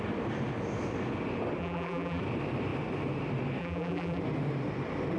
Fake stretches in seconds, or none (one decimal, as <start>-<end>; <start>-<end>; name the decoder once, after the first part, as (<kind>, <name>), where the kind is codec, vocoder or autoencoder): 1.6-2.2 (vocoder, BigVGAN v2); 3.6-4.2